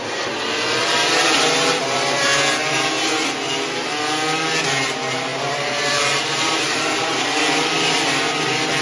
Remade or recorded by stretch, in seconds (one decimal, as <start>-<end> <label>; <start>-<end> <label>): 0.0-2.3 remade; 2.3-4.7 recorded; 4.7-8.8 remade